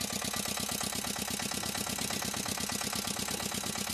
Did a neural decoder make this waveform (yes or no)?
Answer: no